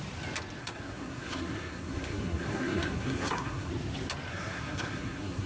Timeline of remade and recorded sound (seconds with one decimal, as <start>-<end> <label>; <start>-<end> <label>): 0.0-0.6 recorded; 0.6-3.7 remade; 3.7-4.3 recorded; 4.3-5.5 remade

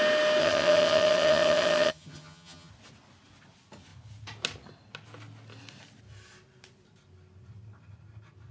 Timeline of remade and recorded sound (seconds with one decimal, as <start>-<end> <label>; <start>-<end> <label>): 0.0-0.4 recorded; 0.4-2.7 remade; 2.7-8.5 recorded

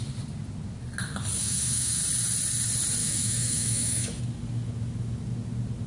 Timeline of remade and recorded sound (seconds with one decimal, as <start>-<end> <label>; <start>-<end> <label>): 0.0-1.4 recorded; 1.4-2.0 remade; 2.0-3.0 recorded; 3.0-4.2 remade; 4.2-5.9 recorded

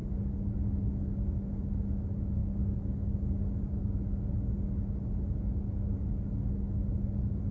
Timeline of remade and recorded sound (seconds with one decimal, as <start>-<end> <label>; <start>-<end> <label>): 0.0-7.5 recorded

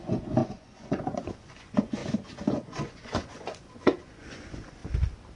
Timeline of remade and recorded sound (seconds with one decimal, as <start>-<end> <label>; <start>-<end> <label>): 0.0-2.0 remade; 2.0-2.5 recorded; 2.5-4.8 remade; 4.8-5.4 recorded